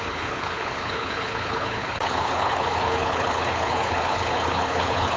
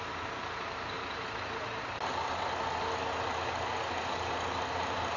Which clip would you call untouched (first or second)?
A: second